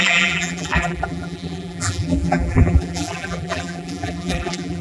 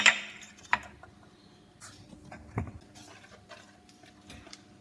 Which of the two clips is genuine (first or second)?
second